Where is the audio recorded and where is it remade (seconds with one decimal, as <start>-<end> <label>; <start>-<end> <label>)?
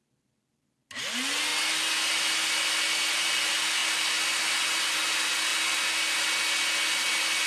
0.0-7.5 recorded